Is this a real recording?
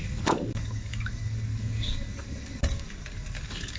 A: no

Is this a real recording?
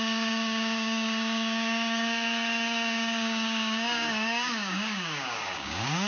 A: no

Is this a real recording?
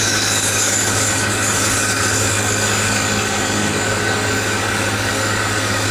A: no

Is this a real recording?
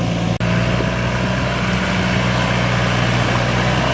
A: yes